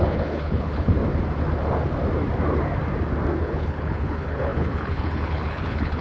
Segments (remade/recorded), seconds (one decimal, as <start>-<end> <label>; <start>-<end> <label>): 0.0-1.0 remade; 1.0-3.4 recorded; 3.4-6.0 remade